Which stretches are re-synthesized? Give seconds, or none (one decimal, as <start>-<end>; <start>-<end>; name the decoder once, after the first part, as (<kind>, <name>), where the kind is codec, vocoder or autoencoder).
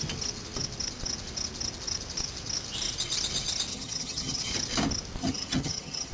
3.7-4.5 (vocoder, HiFi-GAN); 5.2-6.1